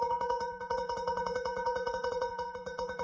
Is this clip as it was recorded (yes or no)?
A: no